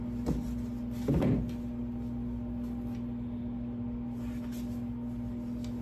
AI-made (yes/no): no